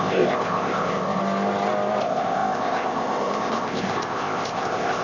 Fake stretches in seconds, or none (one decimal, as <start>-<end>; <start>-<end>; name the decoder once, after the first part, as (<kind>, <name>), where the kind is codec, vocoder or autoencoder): 0.0-1.2 (codec, ZipCodec); 2.0-5.0